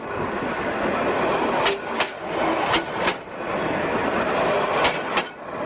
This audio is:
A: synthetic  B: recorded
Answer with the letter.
B